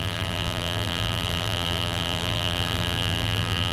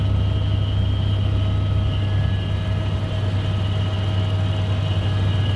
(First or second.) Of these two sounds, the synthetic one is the first